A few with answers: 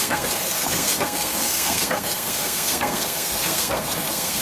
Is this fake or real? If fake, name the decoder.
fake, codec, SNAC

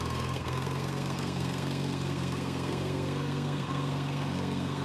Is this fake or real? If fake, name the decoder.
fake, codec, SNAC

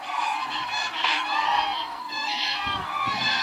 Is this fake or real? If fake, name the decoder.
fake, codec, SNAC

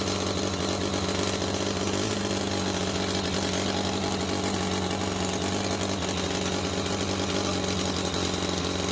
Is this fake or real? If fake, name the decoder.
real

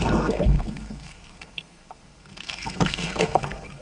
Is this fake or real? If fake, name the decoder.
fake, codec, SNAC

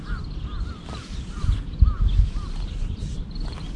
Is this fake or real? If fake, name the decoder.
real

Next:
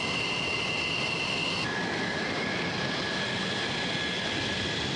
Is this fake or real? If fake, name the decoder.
real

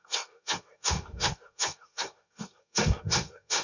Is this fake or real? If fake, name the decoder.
fake, codec, SNAC